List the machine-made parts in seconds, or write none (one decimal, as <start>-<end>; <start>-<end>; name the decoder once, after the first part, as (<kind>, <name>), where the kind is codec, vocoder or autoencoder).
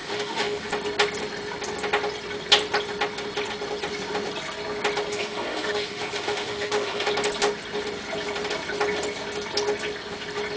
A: 0.0-0.7 (autoencoder, DAC-VAE); 5.1-7.1